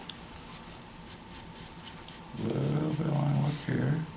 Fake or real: real